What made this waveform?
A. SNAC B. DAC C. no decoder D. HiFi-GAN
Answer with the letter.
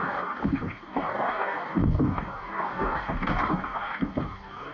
B